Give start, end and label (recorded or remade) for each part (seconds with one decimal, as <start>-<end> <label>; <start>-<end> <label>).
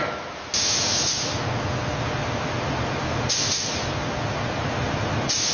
0.0-1.9 recorded; 1.9-5.5 remade